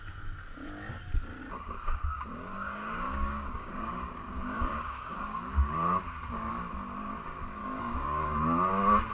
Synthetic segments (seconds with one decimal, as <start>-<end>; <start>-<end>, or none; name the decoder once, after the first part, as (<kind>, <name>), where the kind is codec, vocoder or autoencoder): 1.4-6.5 (codec, DAC); 7.6-8.7